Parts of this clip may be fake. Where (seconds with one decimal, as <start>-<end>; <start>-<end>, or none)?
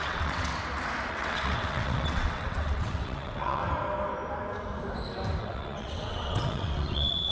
0.0-0.5; 1.1-3.6; 5.4-7.3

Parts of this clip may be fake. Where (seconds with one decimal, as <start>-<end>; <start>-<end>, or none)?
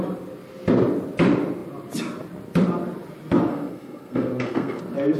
3.5-4.8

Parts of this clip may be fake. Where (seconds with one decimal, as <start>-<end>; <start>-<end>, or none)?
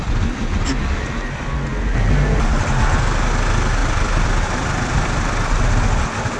3.8-5.7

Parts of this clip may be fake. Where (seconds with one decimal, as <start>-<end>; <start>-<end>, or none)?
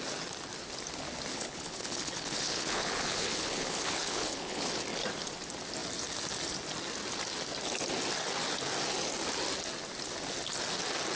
1.3-4.7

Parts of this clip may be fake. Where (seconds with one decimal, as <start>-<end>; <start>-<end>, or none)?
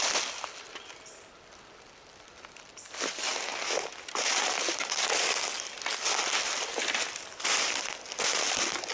none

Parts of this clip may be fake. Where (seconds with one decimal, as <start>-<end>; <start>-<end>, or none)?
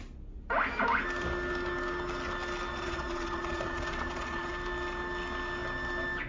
2.7-4.5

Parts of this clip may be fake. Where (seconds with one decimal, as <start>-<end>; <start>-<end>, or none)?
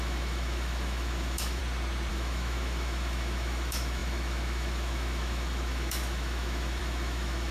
0.0-1.6; 2.1-7.5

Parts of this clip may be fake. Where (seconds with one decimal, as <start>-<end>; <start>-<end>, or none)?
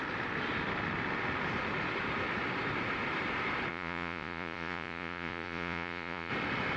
3.7-6.3